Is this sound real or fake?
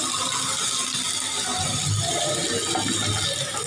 real